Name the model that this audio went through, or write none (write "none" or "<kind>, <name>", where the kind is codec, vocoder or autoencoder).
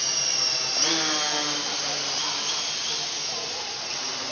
none